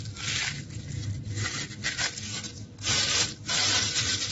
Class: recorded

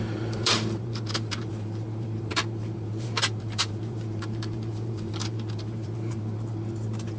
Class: remade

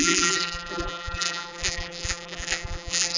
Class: remade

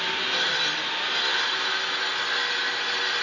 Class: recorded